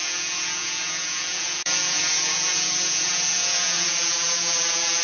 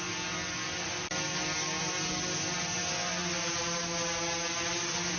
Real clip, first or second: second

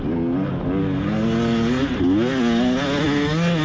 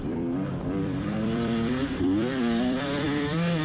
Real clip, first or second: first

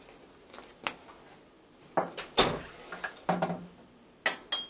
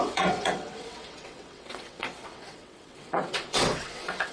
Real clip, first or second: first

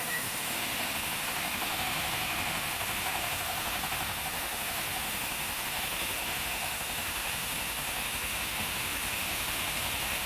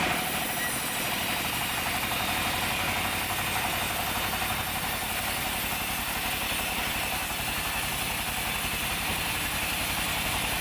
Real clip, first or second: second